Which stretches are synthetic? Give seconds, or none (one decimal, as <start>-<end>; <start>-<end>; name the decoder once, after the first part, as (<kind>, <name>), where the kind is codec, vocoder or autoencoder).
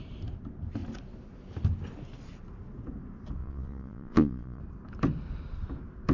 3.4-4.6 (vocoder, Vocos)